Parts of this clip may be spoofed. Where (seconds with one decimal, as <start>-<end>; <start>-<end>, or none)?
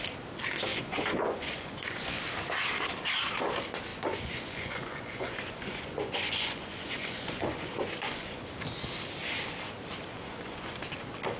0.7-2.2; 3.9-8.5; 10.1-10.8